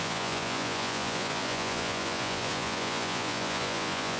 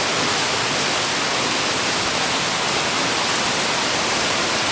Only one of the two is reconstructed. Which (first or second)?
first